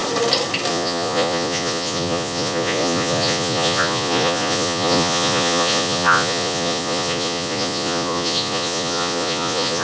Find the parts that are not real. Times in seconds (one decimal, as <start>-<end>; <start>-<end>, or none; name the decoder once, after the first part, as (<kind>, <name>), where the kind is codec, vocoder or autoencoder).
0.7-9.8 (vocoder, Vocos)